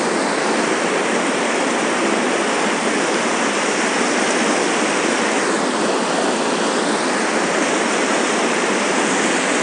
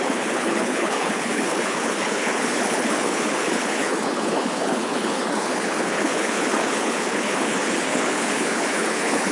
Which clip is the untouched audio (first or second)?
first